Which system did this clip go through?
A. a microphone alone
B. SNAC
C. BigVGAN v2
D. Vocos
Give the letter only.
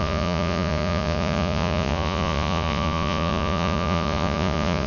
D